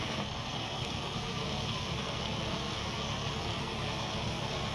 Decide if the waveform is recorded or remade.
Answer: remade